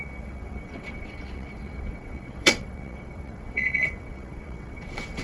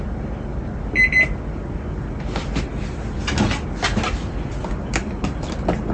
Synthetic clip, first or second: first